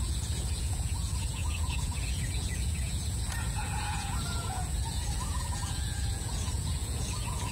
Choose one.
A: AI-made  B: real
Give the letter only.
A